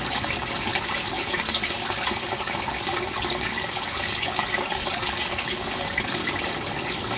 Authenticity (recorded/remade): remade